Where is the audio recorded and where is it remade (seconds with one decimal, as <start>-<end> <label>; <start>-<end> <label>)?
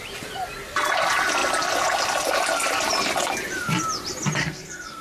0.0-4.4 recorded; 4.4-5.0 remade